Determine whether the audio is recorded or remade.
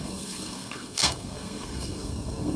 remade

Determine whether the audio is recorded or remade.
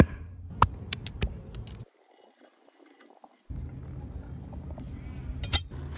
recorded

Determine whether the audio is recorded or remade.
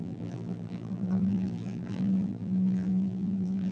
remade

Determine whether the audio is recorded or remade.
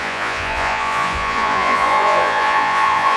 remade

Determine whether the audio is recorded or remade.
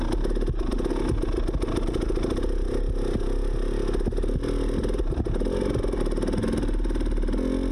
recorded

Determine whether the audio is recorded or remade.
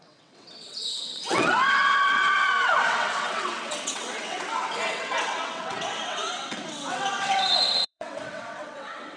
remade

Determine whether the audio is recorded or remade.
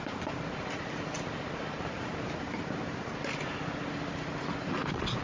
recorded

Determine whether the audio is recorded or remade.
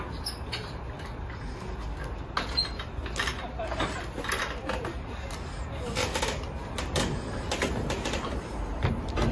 recorded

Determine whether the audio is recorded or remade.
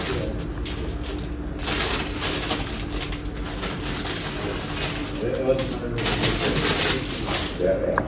recorded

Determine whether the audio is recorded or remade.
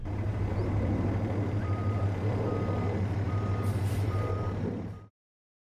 remade